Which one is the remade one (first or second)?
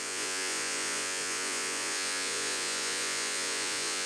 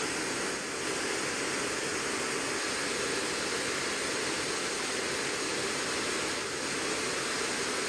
first